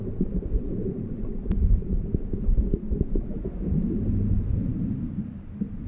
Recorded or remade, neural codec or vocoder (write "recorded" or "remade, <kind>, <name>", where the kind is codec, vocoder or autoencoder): recorded